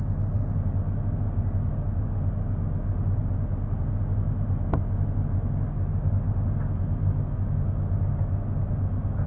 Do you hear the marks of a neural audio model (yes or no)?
no